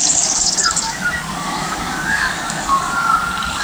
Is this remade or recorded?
remade